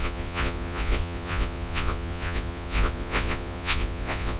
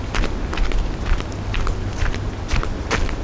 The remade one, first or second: first